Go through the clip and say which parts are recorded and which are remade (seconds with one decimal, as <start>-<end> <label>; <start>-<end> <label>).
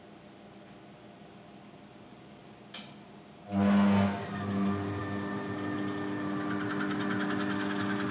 0.0-8.1 recorded